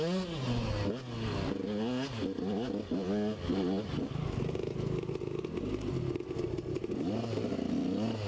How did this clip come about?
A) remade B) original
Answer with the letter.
B